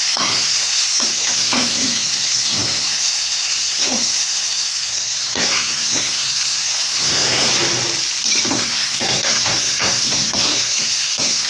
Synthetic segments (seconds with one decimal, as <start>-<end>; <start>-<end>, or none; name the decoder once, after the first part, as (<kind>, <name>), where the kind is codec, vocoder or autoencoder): 0.0-7.5 (codec, SNAC); 8.5-11.5